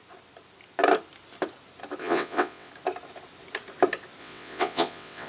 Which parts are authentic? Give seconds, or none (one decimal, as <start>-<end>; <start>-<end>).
0.0-2.0; 2.7-4.2